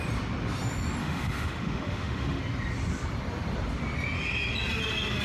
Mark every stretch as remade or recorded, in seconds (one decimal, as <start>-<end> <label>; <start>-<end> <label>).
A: 0.0-1.0 recorded; 1.0-2.4 remade; 2.4-5.2 recorded